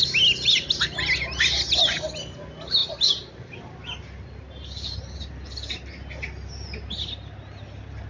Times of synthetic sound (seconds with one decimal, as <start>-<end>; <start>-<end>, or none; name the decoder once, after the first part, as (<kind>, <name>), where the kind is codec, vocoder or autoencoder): none

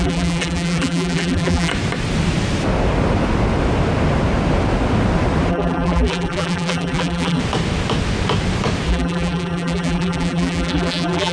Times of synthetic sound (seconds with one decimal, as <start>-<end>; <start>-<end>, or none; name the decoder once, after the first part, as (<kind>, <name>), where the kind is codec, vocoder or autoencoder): 0.0-1.7 (vocoder, BigVGAN v2); 5.5-7.4; 8.9-11.3

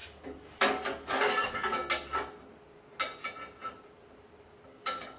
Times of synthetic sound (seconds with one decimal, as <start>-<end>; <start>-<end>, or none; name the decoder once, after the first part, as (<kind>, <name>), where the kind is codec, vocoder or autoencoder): 0.0-1.8 (codec, DAC); 4.7-5.2